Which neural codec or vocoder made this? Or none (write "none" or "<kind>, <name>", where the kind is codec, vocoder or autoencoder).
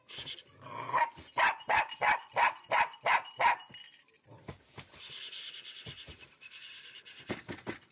none